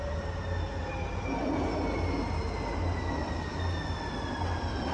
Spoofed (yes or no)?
no